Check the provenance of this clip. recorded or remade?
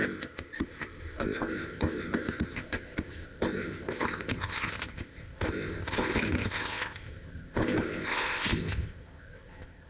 remade